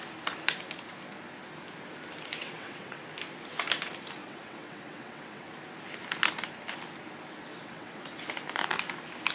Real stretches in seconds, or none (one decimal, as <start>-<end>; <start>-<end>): 0.0-2.4; 3.0-4.2; 5.5-7.5; 8.2-9.3